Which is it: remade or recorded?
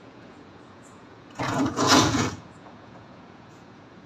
remade